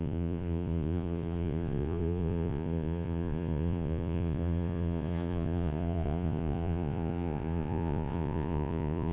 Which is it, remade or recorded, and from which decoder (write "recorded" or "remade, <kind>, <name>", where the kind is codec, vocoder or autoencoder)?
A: remade, vocoder, Vocos